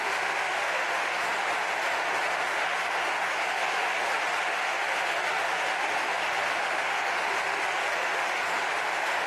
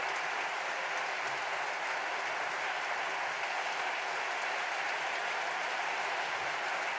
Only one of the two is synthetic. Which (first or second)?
first